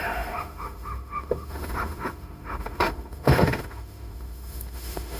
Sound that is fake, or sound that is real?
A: fake